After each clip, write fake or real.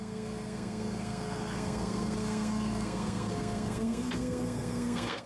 fake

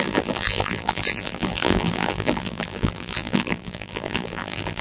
fake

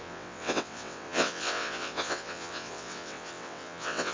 fake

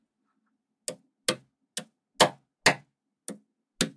real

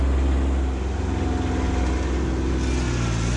real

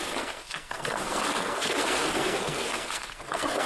fake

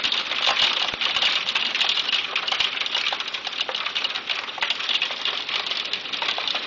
real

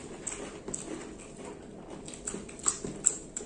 real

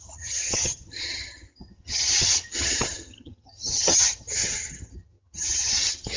fake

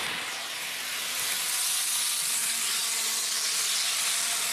real